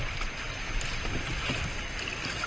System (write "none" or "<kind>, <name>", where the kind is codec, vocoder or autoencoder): none